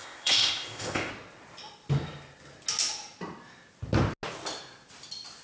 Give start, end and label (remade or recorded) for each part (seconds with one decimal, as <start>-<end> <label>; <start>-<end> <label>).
0.0-1.1 remade; 1.1-5.4 recorded